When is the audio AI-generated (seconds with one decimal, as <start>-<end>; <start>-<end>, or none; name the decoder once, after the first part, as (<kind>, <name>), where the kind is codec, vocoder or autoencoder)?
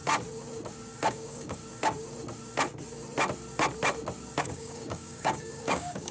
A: 1.1-1.6 (codec, DAC); 4.4-6.1